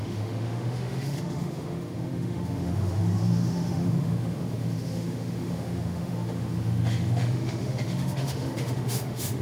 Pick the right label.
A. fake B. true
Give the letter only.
A